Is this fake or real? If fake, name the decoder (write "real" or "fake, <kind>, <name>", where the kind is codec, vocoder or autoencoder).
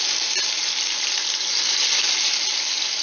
real